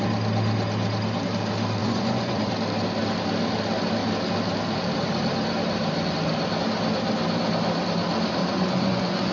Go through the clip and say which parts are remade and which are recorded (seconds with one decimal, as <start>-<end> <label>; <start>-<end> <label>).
0.0-1.8 recorded; 1.8-2.5 remade; 2.5-8.4 recorded; 8.4-9.3 remade